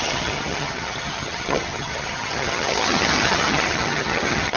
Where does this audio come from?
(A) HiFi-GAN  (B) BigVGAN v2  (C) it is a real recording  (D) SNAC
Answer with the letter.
A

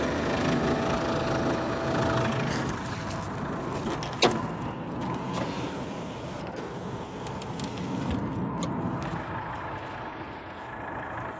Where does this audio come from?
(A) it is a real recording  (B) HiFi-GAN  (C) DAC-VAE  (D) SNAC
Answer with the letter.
A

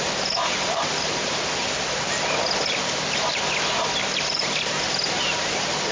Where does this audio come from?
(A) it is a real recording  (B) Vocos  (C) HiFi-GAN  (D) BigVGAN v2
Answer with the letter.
A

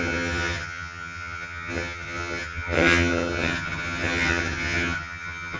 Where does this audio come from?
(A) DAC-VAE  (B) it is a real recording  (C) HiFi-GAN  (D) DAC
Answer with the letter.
C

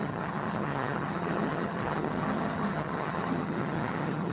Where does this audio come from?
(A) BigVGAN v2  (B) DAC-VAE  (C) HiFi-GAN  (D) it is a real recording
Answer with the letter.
C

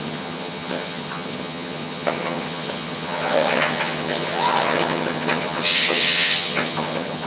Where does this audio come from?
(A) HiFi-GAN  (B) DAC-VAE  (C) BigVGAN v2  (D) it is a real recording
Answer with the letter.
A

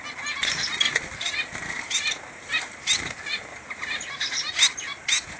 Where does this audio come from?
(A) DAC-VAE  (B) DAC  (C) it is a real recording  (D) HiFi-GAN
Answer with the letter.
C